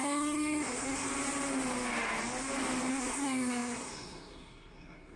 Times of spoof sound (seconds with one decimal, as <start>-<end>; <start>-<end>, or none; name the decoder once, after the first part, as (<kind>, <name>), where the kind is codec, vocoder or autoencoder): 0.0-1.1 (codec, SNAC); 2.9-5.2